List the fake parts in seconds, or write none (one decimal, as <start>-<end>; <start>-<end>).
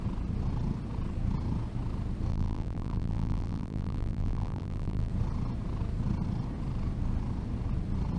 2.3-5.1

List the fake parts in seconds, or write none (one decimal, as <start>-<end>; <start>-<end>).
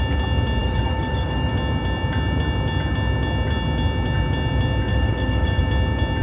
0.6-1.5; 4.9-5.6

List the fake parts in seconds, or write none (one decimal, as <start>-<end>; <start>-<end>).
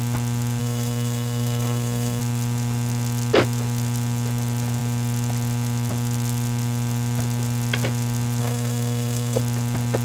0.6-2.2; 8.4-9.4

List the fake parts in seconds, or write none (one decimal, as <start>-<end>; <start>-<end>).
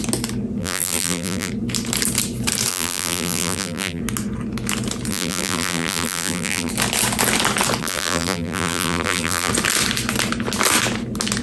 0.6-1.5; 2.7-4.0; 5.1-6.7; 7.8-9.5